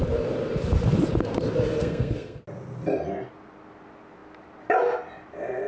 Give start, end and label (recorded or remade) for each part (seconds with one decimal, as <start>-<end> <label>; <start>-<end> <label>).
0.0-1.8 recorded; 1.8-2.4 remade; 2.4-5.7 recorded